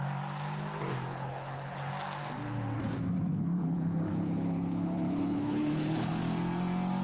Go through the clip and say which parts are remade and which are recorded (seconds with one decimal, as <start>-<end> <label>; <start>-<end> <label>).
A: 0.0-1.1 recorded; 1.1-1.9 remade; 1.9-3.3 recorded; 3.3-6.2 remade; 6.2-7.0 recorded